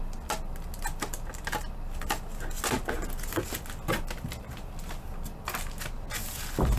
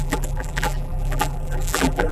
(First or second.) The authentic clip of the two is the first